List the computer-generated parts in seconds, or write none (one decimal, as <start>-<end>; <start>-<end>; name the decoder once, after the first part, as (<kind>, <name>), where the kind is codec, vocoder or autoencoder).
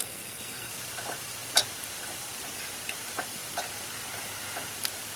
0.0-0.7 (codec, SNAC)